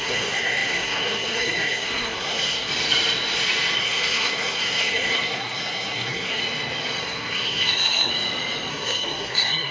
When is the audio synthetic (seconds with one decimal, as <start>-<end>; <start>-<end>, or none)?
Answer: 0.0-2.7; 3.8-6.4; 7.0-8.1; 8.7-9.7